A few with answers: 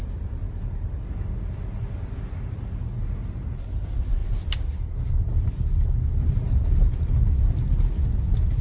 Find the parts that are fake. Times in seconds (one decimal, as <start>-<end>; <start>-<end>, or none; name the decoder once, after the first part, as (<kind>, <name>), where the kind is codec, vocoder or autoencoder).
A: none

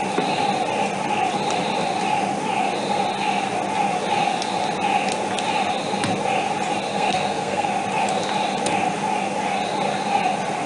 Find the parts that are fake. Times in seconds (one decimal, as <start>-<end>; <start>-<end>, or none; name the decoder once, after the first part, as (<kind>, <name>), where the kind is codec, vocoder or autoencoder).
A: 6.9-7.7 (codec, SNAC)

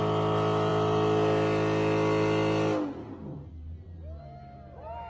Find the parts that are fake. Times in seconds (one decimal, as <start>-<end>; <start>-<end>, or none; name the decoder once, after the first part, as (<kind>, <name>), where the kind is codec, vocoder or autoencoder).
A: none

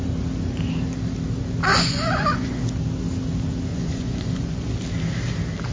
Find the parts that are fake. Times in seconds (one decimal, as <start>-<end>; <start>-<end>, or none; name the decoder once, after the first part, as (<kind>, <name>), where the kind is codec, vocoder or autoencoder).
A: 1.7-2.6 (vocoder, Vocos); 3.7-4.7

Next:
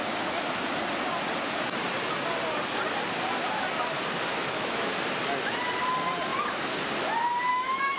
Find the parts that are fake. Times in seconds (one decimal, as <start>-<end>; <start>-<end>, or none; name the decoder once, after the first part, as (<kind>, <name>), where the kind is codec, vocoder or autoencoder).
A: 4.3-4.9 (autoencoder, DAC-VAE); 7.5-8.0